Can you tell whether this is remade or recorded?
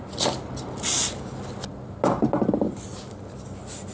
recorded